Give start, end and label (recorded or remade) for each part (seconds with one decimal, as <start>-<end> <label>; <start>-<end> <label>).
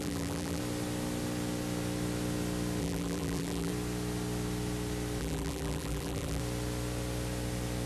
0.0-0.6 remade; 0.6-2.8 recorded; 2.8-3.7 remade; 3.7-5.2 recorded; 5.2-6.4 remade; 6.4-7.9 recorded